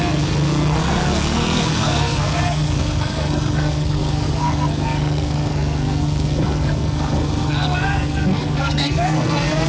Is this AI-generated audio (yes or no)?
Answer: yes